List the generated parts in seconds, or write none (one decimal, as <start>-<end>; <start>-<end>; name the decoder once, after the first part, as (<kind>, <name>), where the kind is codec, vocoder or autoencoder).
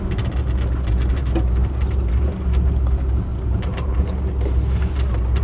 3.3-4.0 (vocoder, BigVGAN v2)